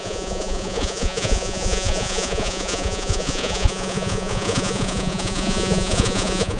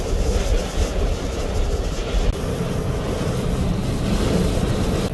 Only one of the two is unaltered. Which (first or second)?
second